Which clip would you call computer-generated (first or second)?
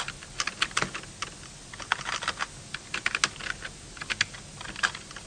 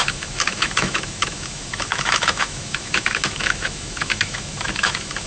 second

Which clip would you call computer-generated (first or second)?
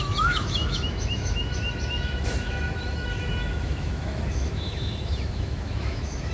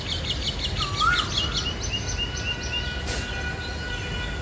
first